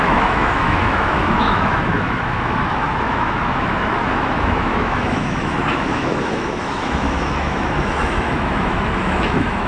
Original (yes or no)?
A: no